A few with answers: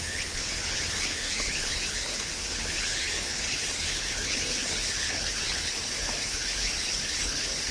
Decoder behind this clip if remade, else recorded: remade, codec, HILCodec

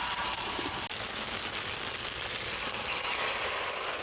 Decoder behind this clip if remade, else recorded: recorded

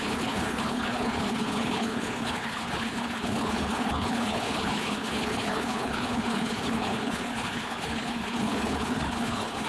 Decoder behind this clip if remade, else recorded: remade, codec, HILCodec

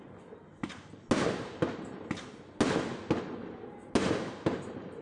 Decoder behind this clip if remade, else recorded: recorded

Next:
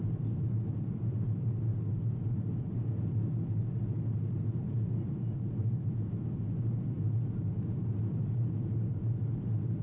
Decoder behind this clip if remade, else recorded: recorded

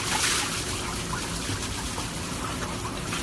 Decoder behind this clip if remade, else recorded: recorded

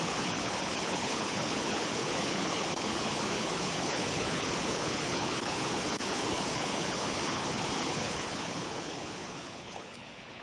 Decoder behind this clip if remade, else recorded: remade, codec, HILCodec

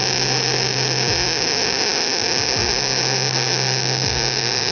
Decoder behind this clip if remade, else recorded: recorded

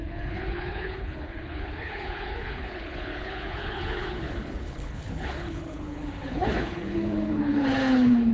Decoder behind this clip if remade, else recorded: remade, codec, HILCodec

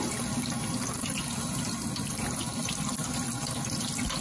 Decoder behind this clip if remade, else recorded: recorded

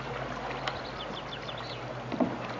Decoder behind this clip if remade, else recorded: recorded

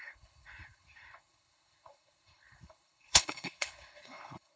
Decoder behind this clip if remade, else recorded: remade, codec, HILCodec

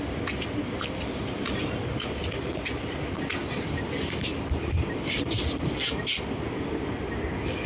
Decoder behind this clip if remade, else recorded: recorded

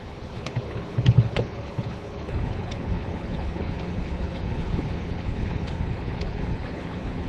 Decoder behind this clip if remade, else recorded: remade, codec, HILCodec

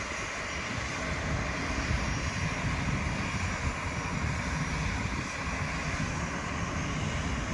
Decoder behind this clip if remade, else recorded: recorded